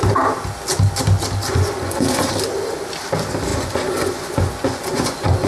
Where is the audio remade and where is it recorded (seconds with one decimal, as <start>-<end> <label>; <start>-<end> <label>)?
0.0-1.5 recorded; 1.5-2.3 remade; 2.3-3.5 recorded; 3.5-5.5 remade